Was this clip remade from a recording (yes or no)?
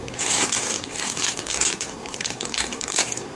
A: yes